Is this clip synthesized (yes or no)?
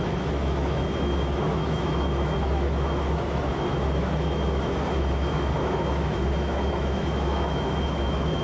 yes